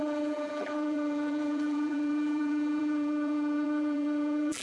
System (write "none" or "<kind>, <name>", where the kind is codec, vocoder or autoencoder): vocoder, BigVGAN v2